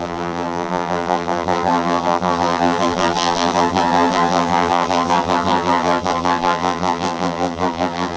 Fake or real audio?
fake